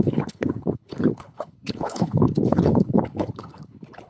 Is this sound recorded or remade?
remade